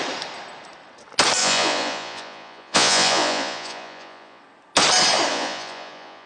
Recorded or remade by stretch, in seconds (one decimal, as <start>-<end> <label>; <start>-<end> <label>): 0.0-1.4 recorded; 1.4-4.4 remade; 4.4-5.3 recorded; 5.3-6.3 remade